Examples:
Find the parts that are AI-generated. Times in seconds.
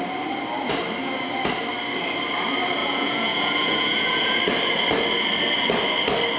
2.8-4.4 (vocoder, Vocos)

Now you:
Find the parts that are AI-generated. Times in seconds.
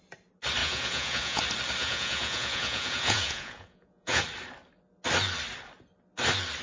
0.6-1.4 (vocoder, Vocos); 1.8-4.2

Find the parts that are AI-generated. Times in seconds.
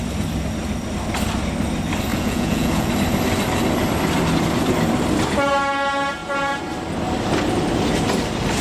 2.1-2.9 (vocoder, Vocos)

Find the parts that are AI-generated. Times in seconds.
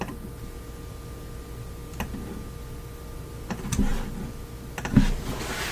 none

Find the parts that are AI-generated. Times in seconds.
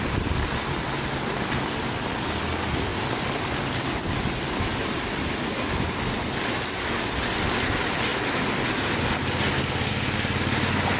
none